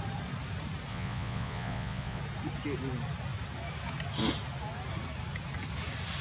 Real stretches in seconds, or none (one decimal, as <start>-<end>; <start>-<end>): 0.0-0.9; 2.2-6.2